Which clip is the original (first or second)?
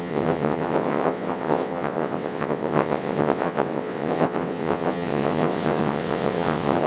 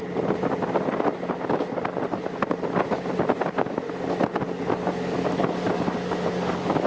second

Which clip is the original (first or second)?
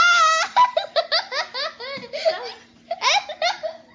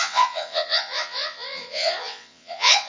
first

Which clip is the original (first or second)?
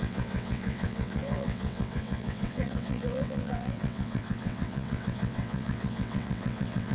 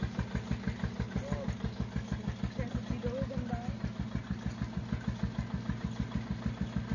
second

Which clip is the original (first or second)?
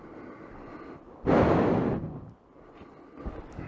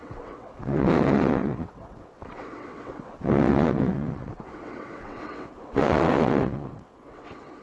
first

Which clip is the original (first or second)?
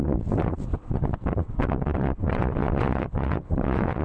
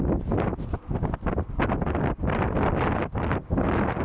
second